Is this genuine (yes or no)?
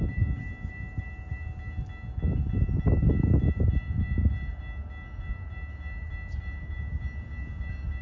yes